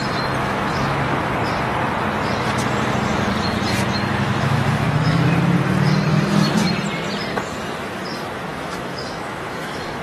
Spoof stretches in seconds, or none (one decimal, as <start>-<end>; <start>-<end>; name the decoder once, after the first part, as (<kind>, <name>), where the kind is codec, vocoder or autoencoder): 0.4-1.3 (autoencoder, DAC-VAE); 4.3-5.3; 8.5-10.0